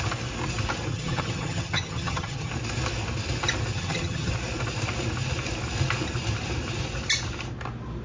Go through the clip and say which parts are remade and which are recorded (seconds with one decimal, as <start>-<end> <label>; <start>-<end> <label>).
0.0-0.9 recorded; 0.9-2.5 remade; 2.5-3.7 recorded; 3.7-4.3 remade; 4.3-8.0 recorded